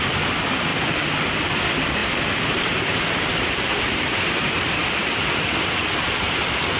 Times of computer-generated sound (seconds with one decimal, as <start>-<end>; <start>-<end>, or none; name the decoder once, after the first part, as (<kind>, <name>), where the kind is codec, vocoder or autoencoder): 2.0-4.1 (vocoder, BigVGAN v2)